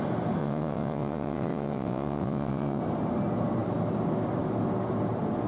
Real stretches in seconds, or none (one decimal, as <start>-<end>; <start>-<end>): 0.0-0.4; 2.8-5.5